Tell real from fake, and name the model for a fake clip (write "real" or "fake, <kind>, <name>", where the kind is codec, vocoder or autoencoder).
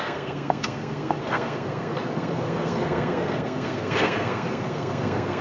fake, codec, SNAC